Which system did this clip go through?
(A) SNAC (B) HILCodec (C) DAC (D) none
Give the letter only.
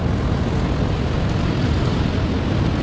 D